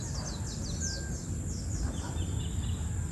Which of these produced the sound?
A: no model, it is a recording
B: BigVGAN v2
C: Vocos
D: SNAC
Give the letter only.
A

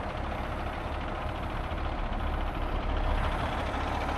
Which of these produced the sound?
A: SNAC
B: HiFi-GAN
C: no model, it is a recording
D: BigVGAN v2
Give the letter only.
D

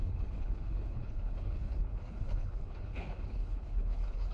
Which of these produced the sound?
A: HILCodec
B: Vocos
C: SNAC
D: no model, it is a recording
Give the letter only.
A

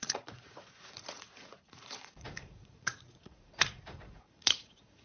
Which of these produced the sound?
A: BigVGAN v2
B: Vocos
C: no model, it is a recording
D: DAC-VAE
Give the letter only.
B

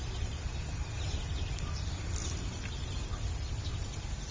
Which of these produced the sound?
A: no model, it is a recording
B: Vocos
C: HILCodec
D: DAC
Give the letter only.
A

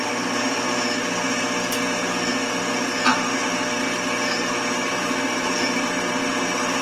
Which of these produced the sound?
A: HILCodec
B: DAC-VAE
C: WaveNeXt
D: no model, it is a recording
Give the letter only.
D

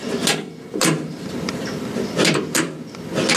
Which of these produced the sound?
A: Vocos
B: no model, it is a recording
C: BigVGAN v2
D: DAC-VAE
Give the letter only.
C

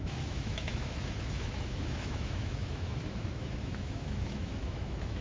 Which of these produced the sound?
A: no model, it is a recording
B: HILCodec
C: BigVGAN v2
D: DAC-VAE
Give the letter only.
D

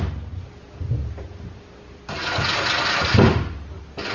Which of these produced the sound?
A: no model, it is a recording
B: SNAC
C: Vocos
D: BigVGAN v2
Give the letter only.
A